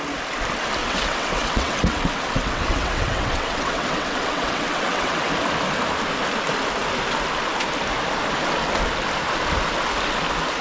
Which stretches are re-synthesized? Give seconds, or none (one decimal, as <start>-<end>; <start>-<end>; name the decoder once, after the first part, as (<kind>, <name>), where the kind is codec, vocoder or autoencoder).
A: 0.8-5.3 (vocoder, WaveNeXt)